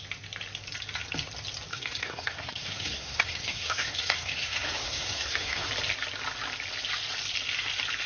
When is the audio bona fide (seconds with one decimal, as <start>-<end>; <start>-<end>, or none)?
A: 0.0-1.7; 5.7-8.1